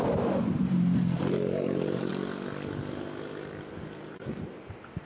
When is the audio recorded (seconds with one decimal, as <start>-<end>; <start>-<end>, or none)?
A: 2.1-3.7

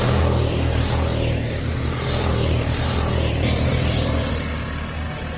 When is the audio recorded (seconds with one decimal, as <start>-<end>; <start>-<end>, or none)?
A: 0.0-1.1; 4.3-5.4

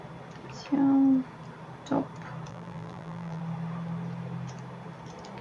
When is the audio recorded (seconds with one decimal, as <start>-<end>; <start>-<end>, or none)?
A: 0.0-2.5; 3.4-5.4

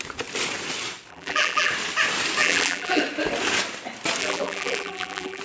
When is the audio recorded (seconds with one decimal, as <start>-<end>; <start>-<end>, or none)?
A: 0.0-1.1; 1.7-2.4; 3.0-4.2

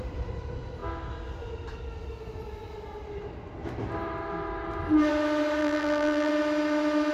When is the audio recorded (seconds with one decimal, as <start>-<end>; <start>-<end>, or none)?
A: 0.0-5.6; 6.3-7.1

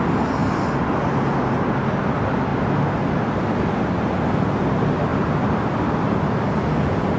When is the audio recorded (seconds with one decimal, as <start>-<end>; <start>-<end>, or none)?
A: 0.0-5.1; 6.3-7.2

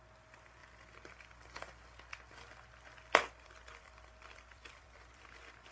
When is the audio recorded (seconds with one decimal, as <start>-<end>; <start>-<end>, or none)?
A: 0.0-0.6; 1.1-3.2

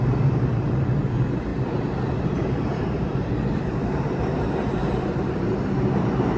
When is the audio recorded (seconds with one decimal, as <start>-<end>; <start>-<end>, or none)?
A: none